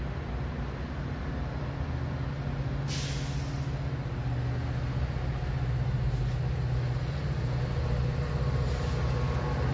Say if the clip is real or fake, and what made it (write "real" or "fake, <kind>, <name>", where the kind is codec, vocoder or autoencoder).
real